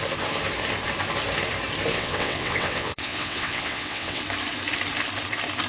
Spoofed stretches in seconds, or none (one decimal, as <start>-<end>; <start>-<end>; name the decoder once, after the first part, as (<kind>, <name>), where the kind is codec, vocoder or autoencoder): 1.9-4.2 (vocoder, WaveNeXt)